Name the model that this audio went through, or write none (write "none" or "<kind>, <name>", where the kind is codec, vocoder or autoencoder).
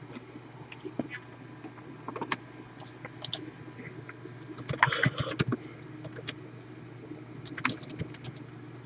none